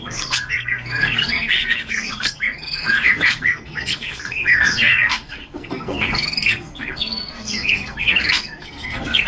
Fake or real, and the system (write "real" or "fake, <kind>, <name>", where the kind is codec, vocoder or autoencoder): fake, codec, SNAC